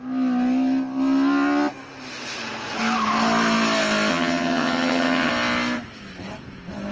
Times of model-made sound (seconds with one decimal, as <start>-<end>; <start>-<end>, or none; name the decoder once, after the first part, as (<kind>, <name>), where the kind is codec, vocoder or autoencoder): 4.1-5.3 (vocoder, HiFi-GAN)